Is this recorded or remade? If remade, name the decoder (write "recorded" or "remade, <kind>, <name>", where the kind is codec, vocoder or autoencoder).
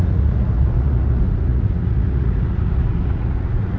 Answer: remade, vocoder, Vocos